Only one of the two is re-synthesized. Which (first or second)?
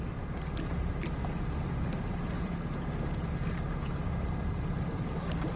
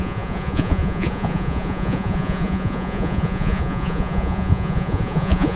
second